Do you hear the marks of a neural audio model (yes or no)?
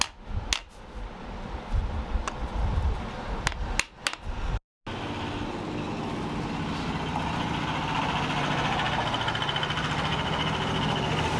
no